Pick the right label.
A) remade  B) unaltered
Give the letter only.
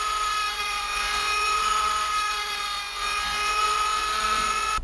A